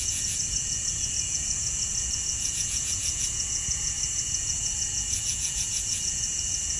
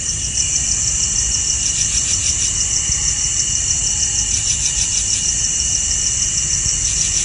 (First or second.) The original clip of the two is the second